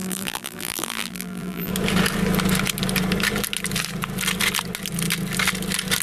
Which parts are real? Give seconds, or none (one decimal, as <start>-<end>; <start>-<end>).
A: 1.7-6.0